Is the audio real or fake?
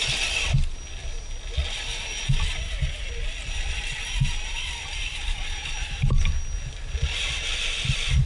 real